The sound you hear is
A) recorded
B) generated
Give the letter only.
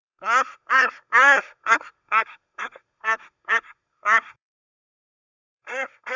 B